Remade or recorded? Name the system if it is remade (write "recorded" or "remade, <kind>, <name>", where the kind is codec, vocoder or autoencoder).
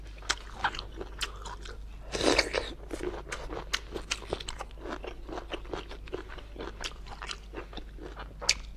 recorded